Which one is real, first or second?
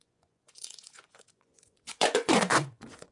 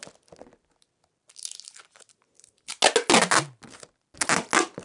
second